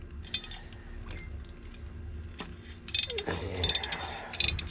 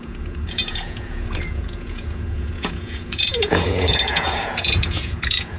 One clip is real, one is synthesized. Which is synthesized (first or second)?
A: second